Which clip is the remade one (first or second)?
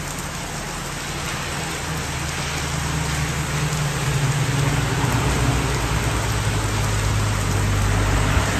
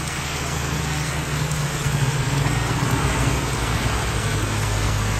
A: second